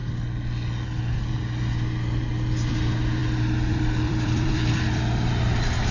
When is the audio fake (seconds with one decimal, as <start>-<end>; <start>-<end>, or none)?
3.2-5.3